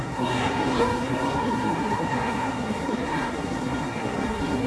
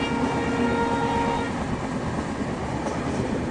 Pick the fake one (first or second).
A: first